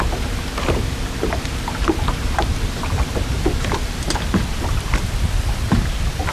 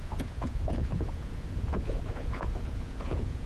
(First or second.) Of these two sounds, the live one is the first